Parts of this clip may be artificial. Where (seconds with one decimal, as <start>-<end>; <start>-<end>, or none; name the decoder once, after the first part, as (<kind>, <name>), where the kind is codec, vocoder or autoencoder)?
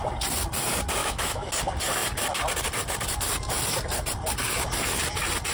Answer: 1.0-1.5 (autoencoder, DAC-VAE)